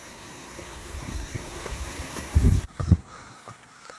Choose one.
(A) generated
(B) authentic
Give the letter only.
A